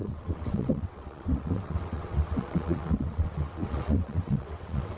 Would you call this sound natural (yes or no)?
no